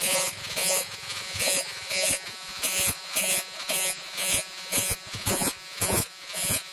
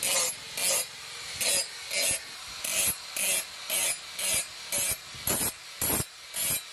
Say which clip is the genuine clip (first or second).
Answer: second